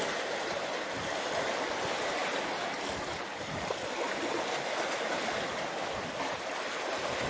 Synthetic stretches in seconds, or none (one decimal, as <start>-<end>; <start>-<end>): none